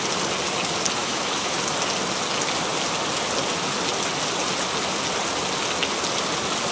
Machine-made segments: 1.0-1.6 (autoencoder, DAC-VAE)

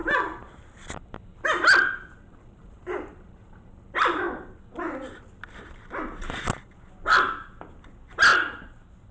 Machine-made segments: 0.0-4.6 (vocoder, BigVGAN v2); 8.3-9.1

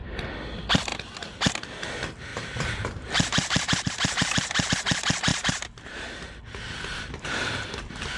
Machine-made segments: 2.3-4.7 (vocoder, BigVGAN v2); 5.3-6.4; 6.9-7.6

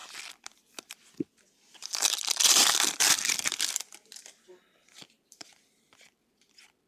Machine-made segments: 1.1-6.9 (vocoder, BigVGAN v2)

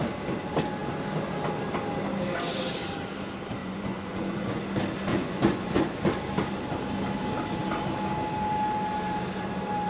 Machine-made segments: 3.6-4.6 (vocoder, Vocos); 5.1-5.9

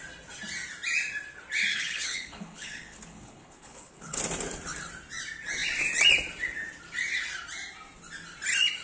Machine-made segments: 1.7-4.2 (codec, HILCodec)